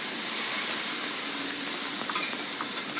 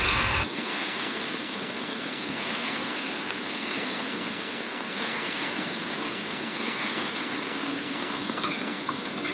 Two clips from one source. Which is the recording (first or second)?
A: first